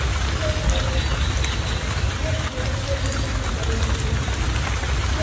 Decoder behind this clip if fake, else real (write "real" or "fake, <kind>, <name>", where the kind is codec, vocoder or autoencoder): real